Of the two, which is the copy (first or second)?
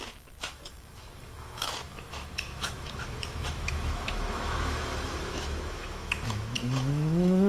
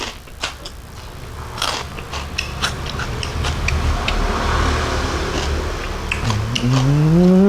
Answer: first